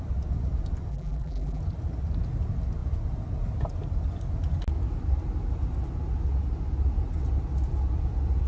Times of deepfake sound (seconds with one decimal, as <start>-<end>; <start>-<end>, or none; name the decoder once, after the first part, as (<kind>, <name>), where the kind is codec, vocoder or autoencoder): 0.9-1.6 (vocoder, BigVGAN v2)